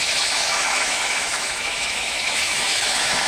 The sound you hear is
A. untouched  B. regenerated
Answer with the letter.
B